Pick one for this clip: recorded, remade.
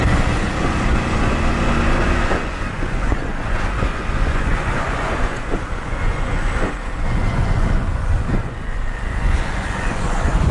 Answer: remade